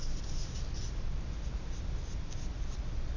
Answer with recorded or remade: recorded